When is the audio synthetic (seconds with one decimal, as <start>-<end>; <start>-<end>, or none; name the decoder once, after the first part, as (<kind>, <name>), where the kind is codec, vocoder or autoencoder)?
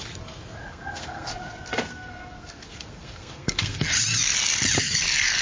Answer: 0.6-3.8 (codec, SNAC)